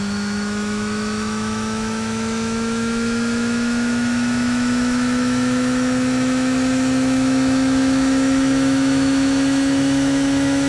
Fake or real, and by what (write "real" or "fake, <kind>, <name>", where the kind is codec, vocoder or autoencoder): fake, autoencoder, DAC-VAE